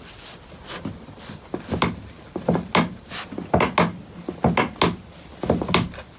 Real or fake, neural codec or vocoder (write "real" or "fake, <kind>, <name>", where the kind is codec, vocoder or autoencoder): real